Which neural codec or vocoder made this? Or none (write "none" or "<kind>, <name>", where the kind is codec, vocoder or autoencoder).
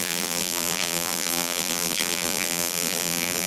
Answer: vocoder, BigVGAN v2